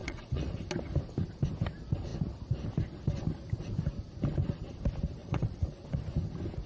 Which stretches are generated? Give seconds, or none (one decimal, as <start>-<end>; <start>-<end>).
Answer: 0.0-0.6; 5.2-5.8